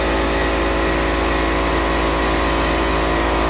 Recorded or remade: recorded